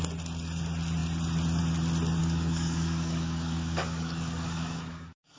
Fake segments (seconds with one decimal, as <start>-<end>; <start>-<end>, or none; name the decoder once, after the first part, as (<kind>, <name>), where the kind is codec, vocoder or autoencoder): 2.2-5.4 (codec, DAC)